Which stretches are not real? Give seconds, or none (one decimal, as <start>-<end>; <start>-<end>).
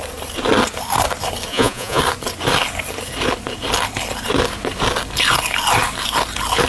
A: 1.5-2.0